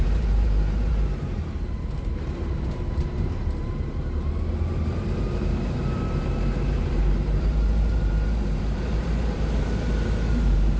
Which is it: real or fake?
fake